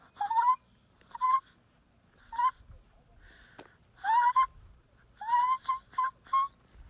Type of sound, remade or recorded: recorded